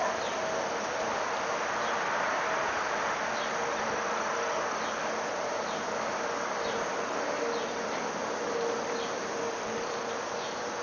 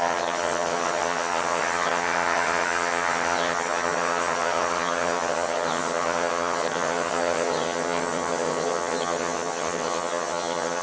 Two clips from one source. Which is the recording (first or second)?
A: first